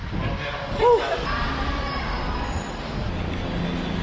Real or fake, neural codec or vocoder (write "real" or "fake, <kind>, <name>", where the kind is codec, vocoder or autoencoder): real